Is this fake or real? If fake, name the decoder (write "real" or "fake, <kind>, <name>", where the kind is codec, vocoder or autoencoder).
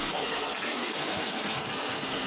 fake, codec, SNAC